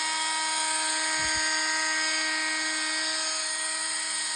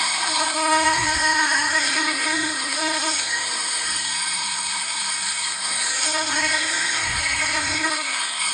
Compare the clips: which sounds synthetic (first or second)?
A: second